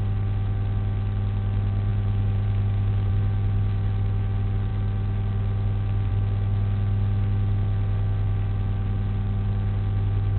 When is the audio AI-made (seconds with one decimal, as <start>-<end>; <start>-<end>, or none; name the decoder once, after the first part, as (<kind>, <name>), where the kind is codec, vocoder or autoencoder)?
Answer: 1.9-3.1 (vocoder, Vocos)